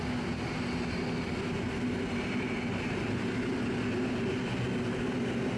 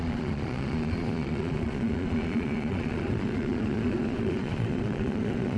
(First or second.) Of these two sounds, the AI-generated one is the second